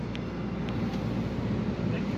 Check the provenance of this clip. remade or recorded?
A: recorded